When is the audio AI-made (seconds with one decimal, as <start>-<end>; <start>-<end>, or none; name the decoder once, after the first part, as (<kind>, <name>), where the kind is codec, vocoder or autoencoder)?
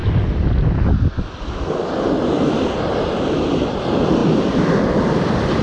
none